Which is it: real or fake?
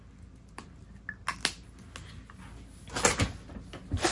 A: real